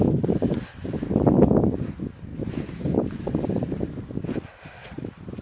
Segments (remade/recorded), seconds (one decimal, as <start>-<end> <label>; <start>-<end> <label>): 0.0-2.3 recorded; 2.3-3.9 remade; 3.9-4.8 recorded; 4.8-5.4 remade

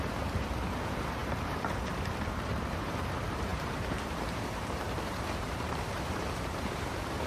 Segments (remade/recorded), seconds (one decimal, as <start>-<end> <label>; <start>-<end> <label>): 0.0-7.3 remade

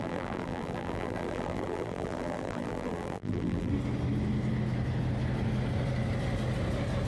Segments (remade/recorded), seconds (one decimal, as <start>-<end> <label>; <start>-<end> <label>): 0.0-3.7 remade; 3.7-7.1 recorded

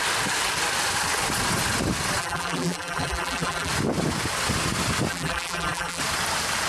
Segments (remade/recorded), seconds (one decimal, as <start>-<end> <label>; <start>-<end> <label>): 0.0-2.2 recorded; 2.2-3.7 remade; 3.7-5.1 recorded; 5.1-6.0 remade; 6.0-6.7 recorded